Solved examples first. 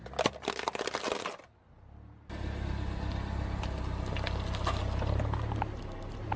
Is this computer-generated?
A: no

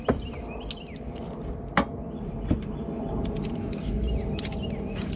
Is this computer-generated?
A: no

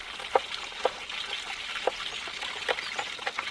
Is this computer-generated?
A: no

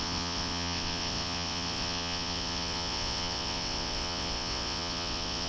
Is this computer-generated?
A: yes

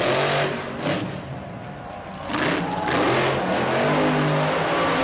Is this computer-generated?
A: no